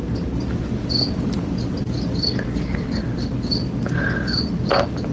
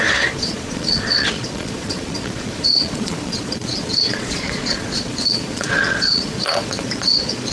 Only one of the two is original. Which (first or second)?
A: first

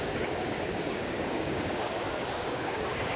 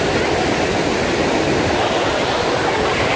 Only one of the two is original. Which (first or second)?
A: second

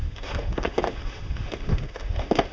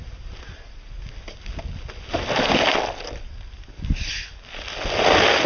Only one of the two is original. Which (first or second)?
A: second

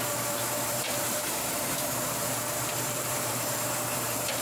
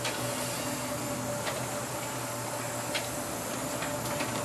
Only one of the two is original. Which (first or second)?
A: second